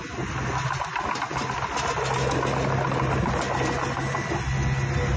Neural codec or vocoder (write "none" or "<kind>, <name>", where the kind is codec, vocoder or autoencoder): none